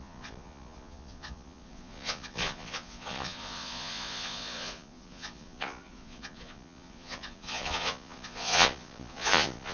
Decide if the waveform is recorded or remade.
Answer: remade